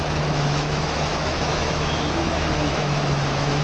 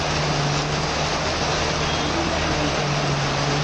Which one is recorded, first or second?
second